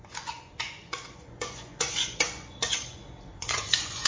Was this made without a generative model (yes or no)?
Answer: no